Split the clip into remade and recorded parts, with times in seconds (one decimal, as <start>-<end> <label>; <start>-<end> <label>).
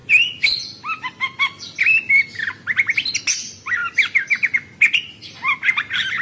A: 0.0-6.2 recorded